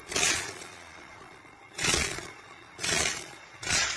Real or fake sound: fake